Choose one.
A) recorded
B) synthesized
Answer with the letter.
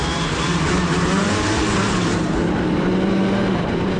B